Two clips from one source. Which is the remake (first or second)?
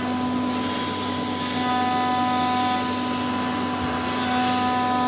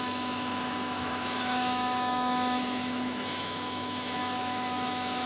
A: second